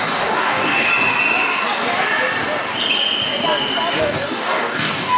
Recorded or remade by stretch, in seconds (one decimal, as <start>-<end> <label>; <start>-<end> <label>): 0.0-0.9 remade; 0.9-4.0 recorded; 4.0-5.2 remade